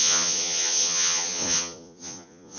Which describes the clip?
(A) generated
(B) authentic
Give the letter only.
A